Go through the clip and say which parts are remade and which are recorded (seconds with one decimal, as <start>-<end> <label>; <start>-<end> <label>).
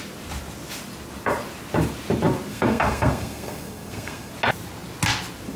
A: 0.0-2.5 recorded; 2.5-4.3 remade; 4.3-5.6 recorded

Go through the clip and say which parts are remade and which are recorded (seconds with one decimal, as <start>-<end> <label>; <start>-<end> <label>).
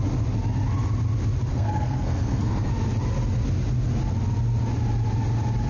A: 0.0-1.5 recorded; 1.5-2.7 remade; 2.7-5.7 recorded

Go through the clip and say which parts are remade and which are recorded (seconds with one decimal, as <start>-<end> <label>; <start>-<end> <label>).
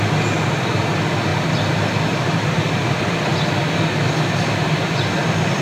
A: 0.0-5.6 recorded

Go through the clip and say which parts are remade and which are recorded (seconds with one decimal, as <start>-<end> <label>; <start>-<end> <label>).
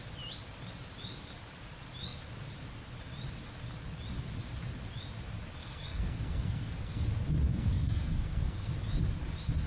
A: 0.0-5.6 recorded; 5.6-7.1 remade; 7.1-7.5 recorded; 7.5-8.7 remade; 8.7-9.7 recorded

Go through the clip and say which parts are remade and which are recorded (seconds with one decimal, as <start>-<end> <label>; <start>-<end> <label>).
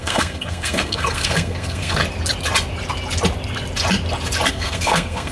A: 0.0-2.0 remade; 2.0-4.5 recorded; 4.5-5.3 remade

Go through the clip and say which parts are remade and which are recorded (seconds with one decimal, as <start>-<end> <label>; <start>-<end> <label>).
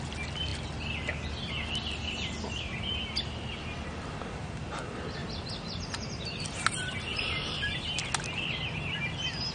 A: 0.0-9.5 recorded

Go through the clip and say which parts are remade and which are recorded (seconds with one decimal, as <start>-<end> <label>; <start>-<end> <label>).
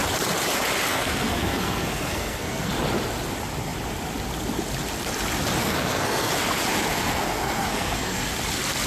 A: 0.0-0.9 recorded; 0.9-2.7 remade; 2.7-5.6 recorded; 5.6-6.3 remade; 6.3-6.9 recorded; 6.9-8.3 remade; 8.3-8.9 recorded